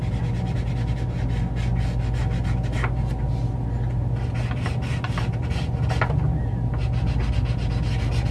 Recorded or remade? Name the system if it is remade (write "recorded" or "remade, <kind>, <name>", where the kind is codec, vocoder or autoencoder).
recorded